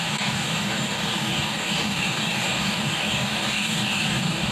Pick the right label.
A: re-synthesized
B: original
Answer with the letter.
A